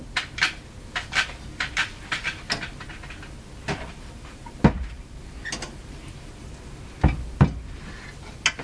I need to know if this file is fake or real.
real